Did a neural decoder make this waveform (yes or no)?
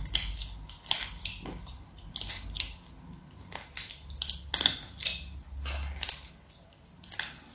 no